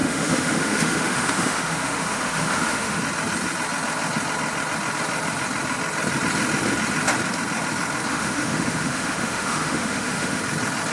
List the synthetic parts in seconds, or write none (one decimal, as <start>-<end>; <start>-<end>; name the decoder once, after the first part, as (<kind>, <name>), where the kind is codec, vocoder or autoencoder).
0.0-3.0 (autoencoder, DAC-VAE); 8.1-10.4